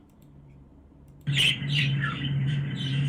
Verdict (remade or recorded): remade